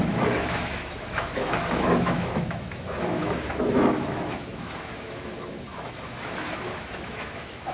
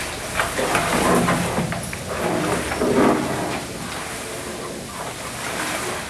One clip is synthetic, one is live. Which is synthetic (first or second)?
first